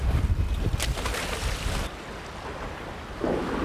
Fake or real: real